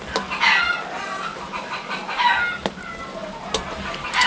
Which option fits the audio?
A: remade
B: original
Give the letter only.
B